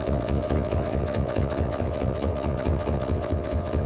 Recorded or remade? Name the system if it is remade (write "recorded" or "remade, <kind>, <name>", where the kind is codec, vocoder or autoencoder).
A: remade, vocoder, WaveNeXt